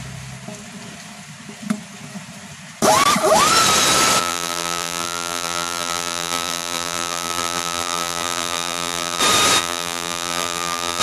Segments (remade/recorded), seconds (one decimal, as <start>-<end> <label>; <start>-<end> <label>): 0.0-4.2 recorded; 4.2-9.2 remade; 9.2-9.6 recorded; 9.6-11.0 remade